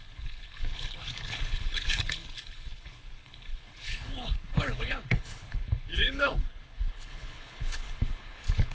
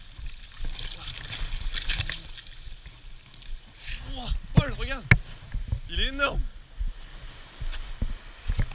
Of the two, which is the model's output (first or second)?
first